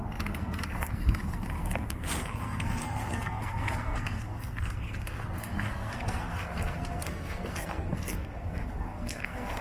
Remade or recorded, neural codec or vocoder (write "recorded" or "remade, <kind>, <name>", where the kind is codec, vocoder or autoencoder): remade, codec, SNAC